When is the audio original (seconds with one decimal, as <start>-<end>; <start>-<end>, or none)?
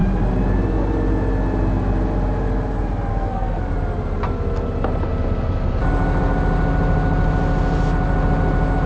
0.0-3.1; 3.6-8.9